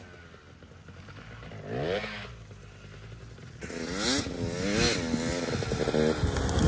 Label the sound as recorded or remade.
recorded